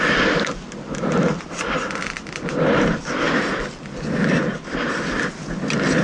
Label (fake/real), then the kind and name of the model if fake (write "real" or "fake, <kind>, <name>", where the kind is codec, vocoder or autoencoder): real